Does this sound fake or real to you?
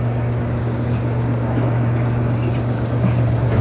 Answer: fake